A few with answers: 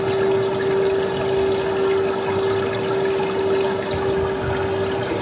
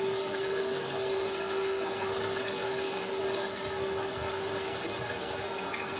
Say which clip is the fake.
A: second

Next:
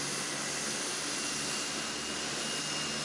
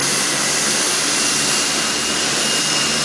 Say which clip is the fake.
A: second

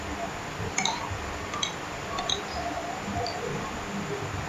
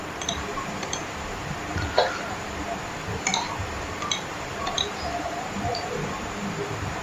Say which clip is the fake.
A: second